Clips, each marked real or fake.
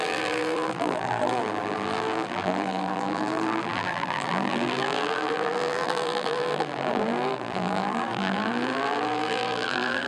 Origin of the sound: fake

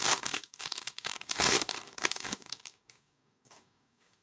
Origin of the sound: fake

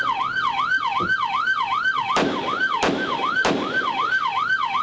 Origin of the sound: real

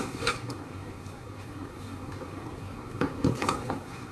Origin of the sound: fake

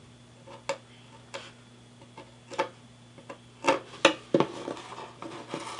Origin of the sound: real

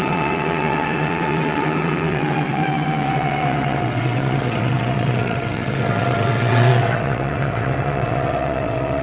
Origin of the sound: fake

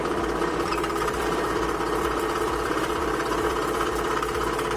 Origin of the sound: fake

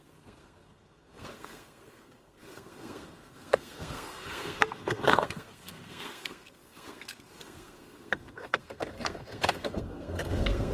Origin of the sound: fake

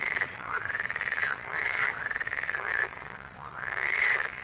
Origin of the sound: fake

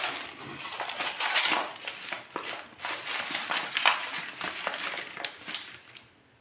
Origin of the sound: real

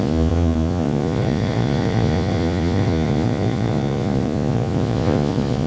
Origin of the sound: fake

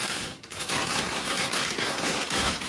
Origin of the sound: fake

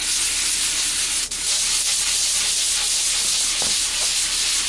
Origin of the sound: real